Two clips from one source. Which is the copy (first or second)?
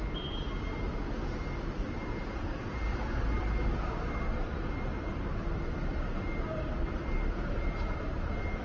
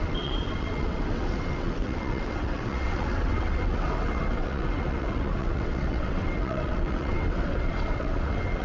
second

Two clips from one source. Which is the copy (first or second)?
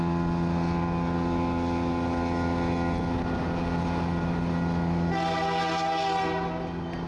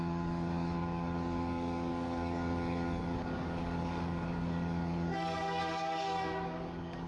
second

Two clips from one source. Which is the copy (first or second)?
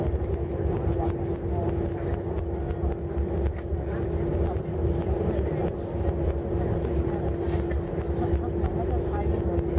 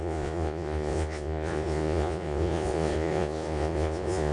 second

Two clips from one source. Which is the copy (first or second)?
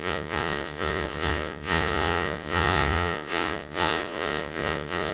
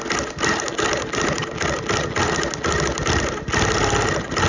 first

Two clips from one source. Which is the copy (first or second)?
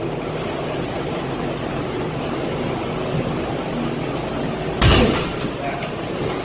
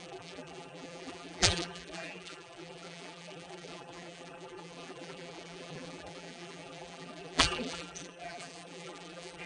second